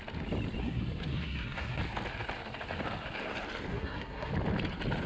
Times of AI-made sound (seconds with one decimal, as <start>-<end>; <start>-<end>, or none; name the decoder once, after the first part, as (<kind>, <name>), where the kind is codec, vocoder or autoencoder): 0.6-1.8 (codec, SNAC); 3.7-4.3